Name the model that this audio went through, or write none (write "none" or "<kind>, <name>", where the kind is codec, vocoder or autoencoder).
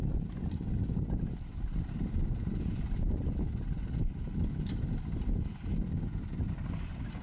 none